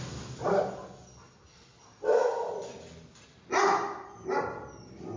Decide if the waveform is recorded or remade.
recorded